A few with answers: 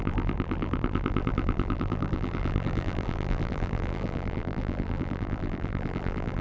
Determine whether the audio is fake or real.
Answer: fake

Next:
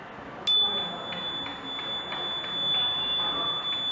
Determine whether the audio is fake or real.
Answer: real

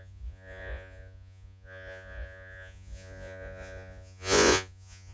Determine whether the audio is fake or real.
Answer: fake